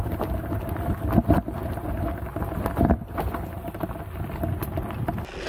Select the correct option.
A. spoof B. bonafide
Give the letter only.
B